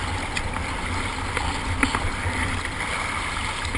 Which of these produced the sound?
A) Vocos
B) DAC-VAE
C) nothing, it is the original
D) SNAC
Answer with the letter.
C